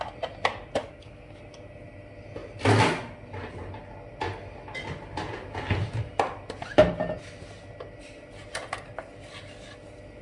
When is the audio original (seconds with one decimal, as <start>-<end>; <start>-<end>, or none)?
0.0-0.8; 1.4-10.2